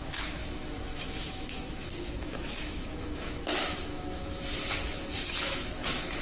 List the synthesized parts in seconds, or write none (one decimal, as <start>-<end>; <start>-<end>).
0.0-6.2